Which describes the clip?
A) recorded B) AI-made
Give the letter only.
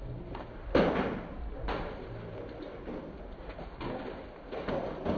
A